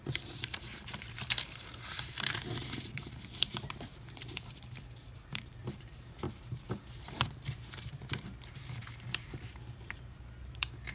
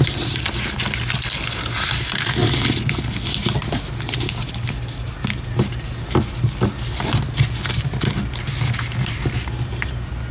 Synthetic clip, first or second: first